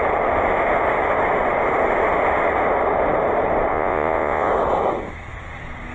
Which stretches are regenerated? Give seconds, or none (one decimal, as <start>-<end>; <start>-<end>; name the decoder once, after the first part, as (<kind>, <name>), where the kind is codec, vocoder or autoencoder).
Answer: 3.7-4.5 (vocoder, Vocos)